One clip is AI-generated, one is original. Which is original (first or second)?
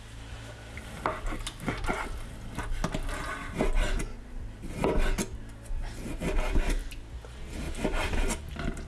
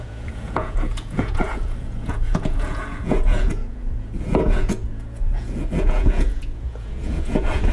first